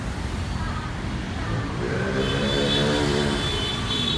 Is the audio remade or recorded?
remade